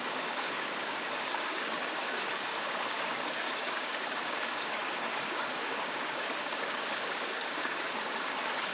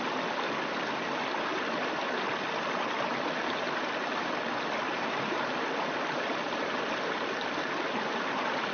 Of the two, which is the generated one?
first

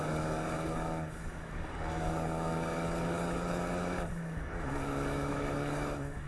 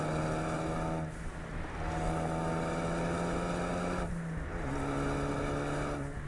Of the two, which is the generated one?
first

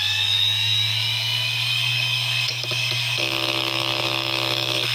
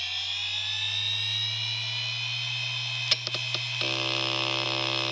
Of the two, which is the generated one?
first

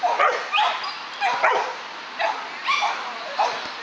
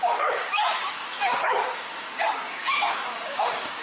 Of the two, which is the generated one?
second